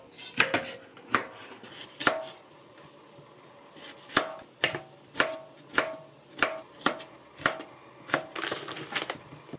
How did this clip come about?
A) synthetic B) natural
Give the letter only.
B